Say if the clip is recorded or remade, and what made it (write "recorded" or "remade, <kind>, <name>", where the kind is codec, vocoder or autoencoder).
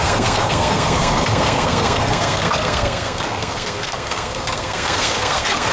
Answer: remade, codec, SNAC